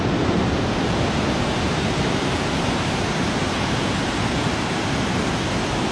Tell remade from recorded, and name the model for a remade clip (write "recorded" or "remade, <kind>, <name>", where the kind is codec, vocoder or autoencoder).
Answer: recorded